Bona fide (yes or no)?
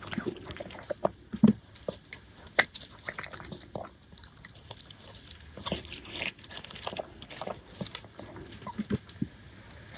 no